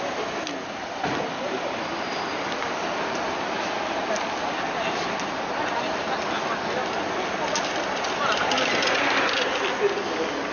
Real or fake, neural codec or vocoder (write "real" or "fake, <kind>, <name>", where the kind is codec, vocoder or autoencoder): real